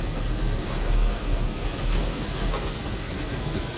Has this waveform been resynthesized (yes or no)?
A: yes